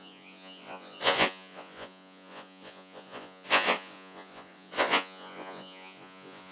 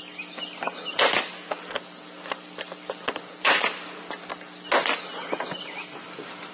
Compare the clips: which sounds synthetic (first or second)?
first